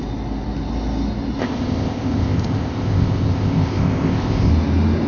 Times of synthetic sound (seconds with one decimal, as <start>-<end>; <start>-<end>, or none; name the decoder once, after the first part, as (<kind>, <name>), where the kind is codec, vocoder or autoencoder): 1.4-4.5 (codec, ZipCodec)